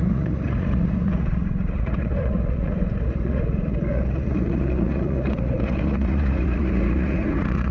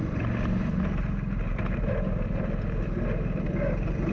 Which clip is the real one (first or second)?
second